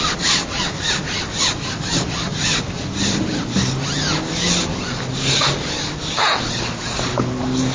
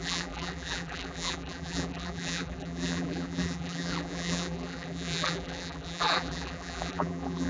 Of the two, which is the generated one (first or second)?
second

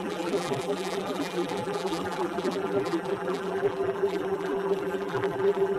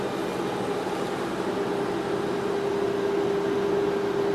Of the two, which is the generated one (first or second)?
first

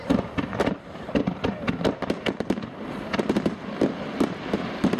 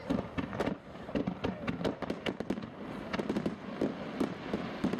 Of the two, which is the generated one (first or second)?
first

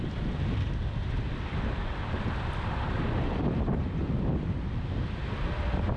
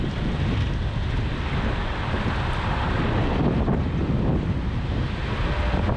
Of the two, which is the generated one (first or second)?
first